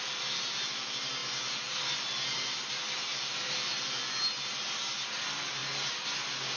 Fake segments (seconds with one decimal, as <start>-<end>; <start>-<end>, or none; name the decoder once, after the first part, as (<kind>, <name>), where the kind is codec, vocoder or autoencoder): none